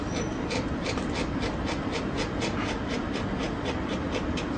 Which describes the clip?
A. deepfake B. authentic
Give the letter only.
A